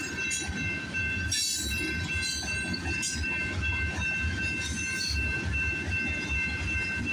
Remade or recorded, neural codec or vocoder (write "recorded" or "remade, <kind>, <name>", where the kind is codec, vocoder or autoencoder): recorded